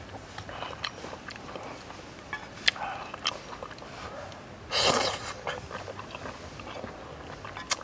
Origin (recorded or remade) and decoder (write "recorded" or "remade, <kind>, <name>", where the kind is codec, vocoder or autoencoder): recorded